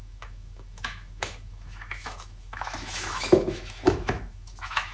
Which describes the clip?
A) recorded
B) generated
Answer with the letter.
B